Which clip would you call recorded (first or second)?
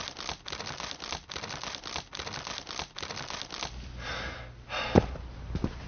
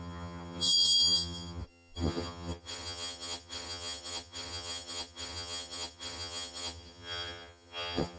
first